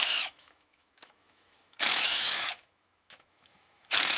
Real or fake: fake